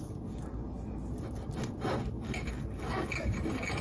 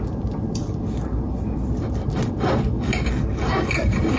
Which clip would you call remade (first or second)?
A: second